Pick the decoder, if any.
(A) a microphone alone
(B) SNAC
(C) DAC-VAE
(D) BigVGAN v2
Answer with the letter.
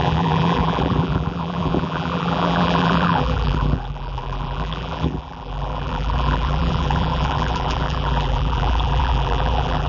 D